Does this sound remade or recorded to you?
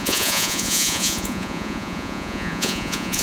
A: remade